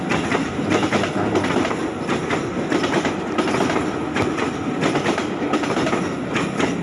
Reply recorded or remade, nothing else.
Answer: recorded